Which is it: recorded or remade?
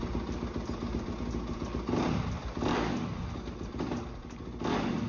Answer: recorded